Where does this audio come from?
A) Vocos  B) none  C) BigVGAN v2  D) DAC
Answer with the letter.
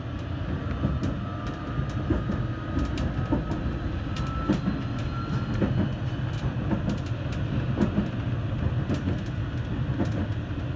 B